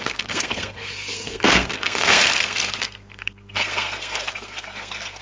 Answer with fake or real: fake